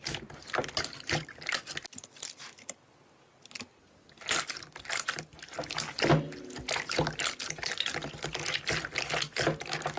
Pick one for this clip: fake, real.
real